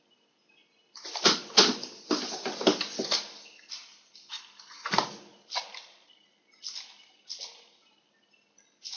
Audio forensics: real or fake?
real